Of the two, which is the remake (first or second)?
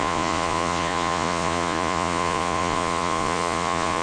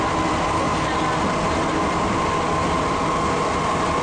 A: first